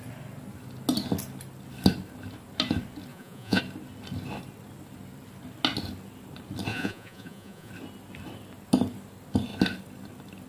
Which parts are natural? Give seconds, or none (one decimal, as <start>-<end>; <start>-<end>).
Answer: 0.0-3.1; 3.6-6.7; 7.7-10.5

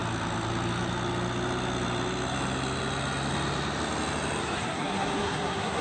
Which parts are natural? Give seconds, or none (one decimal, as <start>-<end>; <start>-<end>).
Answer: 0.0-4.4

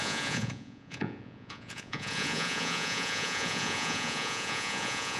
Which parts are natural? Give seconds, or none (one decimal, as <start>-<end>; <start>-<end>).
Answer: none

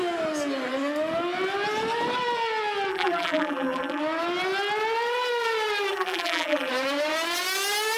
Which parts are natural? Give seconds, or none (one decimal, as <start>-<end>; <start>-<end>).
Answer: 0.0-2.9; 4.0-5.9; 6.7-8.0

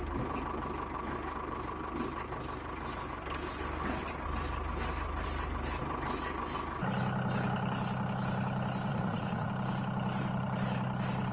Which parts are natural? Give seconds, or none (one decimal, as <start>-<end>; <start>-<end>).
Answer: 0.0-8.9; 9.5-11.3

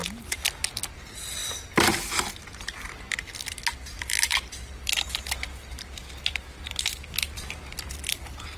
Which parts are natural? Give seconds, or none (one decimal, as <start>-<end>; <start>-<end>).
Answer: 0.0-0.7; 1.4-2.6

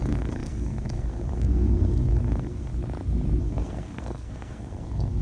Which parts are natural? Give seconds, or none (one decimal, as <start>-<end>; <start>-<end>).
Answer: 2.7-3.4

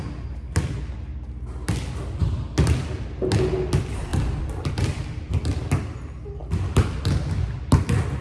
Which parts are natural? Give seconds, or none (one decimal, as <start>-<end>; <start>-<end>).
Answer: 0.0-8.2